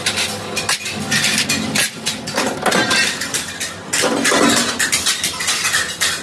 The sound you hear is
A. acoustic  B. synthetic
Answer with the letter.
A